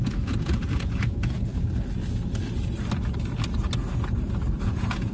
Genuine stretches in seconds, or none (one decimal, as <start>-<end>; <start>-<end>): 1.5-4.6